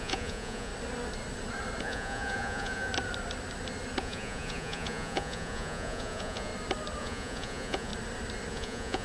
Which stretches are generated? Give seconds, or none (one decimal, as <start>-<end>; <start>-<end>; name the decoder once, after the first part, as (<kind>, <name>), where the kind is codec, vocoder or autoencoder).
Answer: 0.0-0.7 (vocoder, Vocos); 1.8-2.9; 4.0-6.5; 7.0-7.9; 8.5-9.0

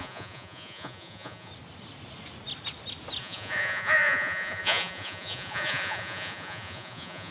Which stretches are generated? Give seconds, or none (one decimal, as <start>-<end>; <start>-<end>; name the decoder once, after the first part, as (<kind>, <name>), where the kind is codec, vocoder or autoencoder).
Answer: 0.0-1.5 (vocoder, Vocos); 3.2-7.3